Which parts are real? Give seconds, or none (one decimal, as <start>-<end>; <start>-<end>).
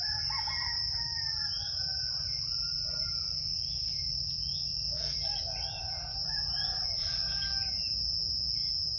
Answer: 7.5-9.0